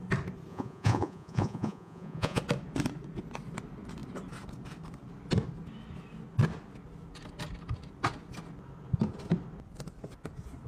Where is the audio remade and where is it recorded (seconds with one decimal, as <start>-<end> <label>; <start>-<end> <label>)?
0.0-0.5 recorded; 0.5-2.4 remade; 2.4-10.7 recorded